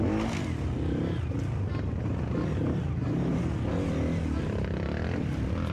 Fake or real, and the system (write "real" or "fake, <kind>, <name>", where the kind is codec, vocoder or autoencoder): real